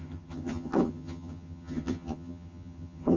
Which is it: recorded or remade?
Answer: remade